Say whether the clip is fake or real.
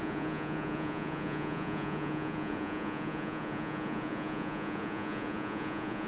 fake